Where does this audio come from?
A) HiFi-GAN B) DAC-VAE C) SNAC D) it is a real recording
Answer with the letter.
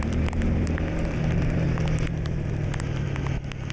D